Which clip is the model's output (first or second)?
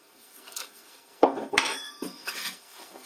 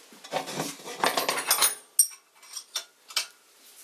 first